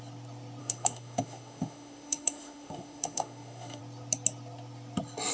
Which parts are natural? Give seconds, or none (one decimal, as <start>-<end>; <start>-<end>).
0.0-0.6; 3.8-5.3